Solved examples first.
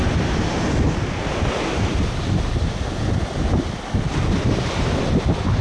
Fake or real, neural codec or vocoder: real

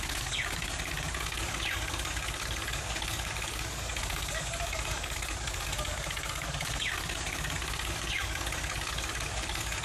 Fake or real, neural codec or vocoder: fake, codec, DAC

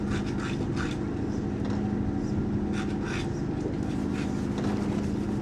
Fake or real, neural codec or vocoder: real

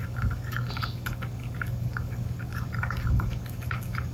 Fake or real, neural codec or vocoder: fake, codec, DAC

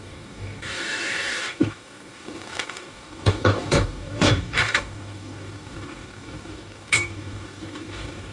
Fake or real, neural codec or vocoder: fake, codec, DAC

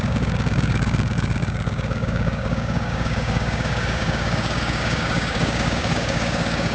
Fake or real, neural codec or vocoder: fake, codec, DAC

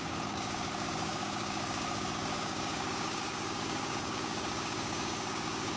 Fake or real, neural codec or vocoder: fake, codec, DAC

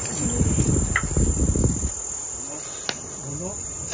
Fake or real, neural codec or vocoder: real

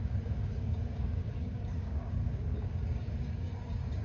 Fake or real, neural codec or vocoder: fake, codec, DAC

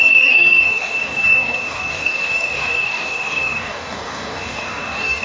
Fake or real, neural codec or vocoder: fake, codec, DAC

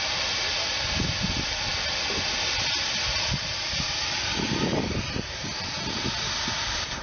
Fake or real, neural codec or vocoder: real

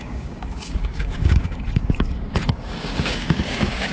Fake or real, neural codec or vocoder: fake, codec, DAC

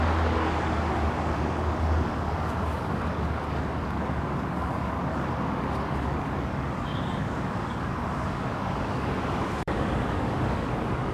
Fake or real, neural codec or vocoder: fake, codec, DAC